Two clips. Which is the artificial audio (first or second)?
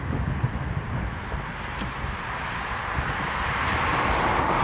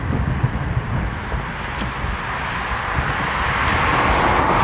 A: first